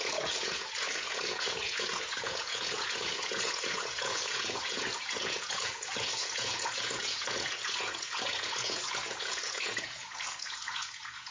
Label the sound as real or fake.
fake